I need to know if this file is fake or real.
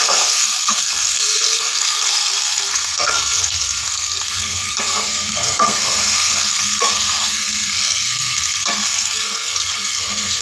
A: fake